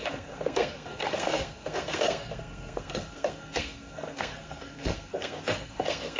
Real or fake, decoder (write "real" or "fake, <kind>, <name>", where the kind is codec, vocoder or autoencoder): fake, codec, SNAC